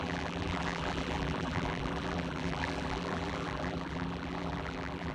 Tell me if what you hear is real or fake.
fake